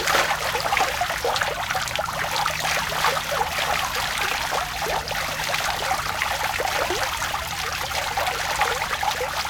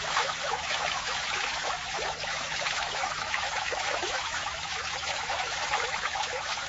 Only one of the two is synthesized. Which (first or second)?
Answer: second